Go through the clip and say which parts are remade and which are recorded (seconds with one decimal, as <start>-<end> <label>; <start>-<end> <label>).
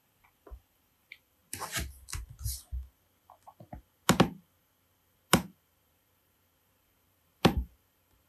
0.0-1.4 remade; 1.4-5.1 recorded; 5.1-8.3 remade